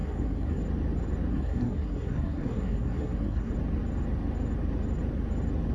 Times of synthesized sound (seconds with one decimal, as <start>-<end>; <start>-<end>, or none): 0.0-0.6; 1.3-3.5